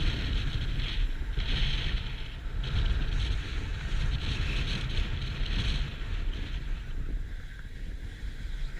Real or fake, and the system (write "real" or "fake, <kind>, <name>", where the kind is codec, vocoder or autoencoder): real